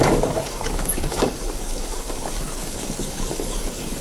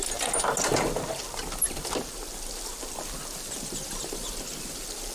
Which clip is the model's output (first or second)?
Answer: first